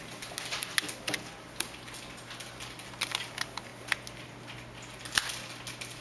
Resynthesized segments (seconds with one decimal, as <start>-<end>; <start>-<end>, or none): none